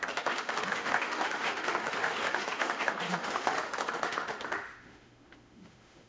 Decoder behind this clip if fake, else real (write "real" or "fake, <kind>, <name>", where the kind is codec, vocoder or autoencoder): fake, autoencoder, DAC-VAE